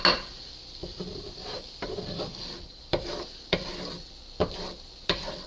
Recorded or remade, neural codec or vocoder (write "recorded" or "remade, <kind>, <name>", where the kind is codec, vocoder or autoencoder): recorded